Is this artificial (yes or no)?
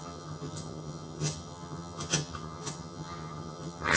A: yes